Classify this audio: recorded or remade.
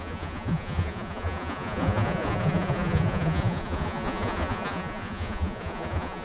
remade